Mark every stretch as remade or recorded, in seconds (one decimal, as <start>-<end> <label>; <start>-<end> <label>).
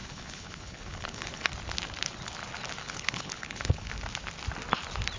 0.0-1.5 remade; 1.5-2.8 recorded; 2.8-3.9 remade; 3.9-5.2 recorded